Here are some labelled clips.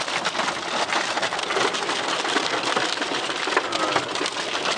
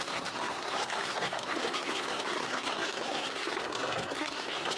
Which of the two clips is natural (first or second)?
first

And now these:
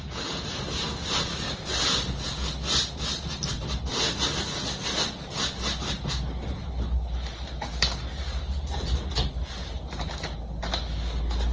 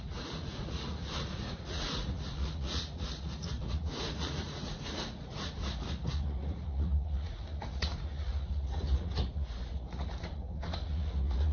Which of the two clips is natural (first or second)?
first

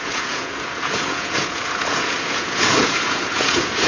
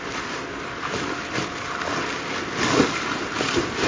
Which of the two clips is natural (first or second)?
second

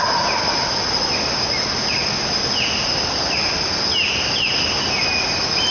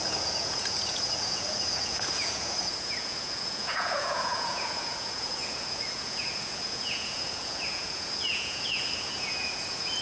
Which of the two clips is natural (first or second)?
first